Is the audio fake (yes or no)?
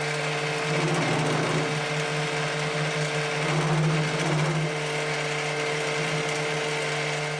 no